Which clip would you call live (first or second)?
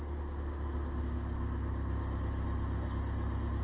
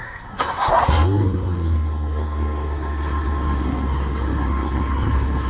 first